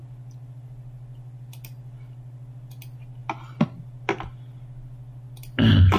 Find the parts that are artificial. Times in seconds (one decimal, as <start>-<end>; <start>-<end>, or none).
none